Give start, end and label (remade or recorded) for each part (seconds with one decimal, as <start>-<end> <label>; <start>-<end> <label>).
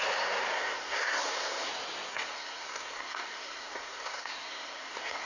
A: 0.0-0.5 recorded; 0.5-1.7 remade; 1.7-2.1 recorded; 2.1-5.3 remade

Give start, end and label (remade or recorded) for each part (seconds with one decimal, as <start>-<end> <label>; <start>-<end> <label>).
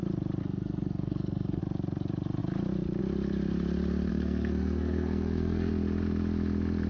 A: 0.0-0.4 recorded; 0.4-1.6 remade; 1.6-4.1 recorded; 4.1-5.7 remade; 5.7-6.9 recorded